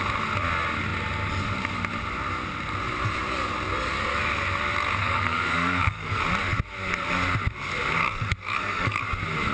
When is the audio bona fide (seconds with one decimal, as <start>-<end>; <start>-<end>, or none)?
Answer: 0.0-5.0; 6.2-8.0; 9.0-9.5